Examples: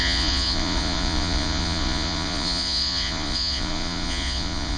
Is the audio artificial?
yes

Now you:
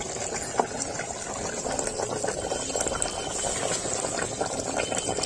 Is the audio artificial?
no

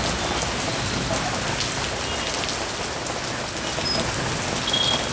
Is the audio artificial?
no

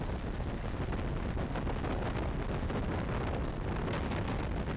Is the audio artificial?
no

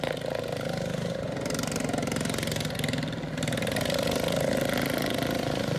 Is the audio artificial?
no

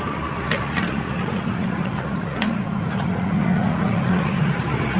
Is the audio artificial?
yes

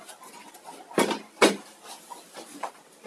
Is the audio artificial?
no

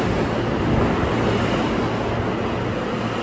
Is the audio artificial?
no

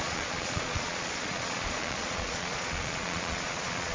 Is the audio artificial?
yes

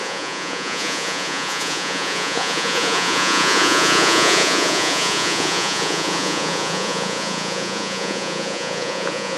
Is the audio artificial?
yes